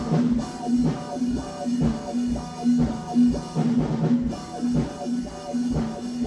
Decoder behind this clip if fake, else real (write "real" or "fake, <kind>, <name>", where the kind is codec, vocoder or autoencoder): real